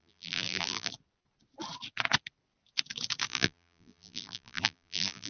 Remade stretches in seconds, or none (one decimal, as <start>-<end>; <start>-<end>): 0.0-0.9; 3.3-5.3